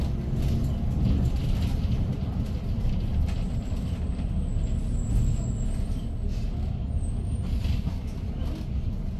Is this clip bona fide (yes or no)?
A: yes